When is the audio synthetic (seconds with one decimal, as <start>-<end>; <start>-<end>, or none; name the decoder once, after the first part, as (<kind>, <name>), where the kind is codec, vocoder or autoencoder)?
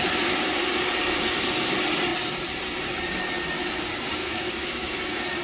4.2-5.0 (autoencoder, DAC-VAE)